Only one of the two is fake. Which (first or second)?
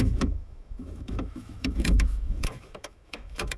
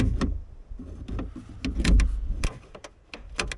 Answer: first